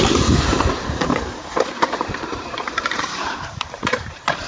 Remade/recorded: remade